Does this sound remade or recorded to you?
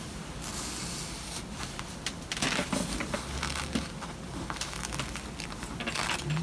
recorded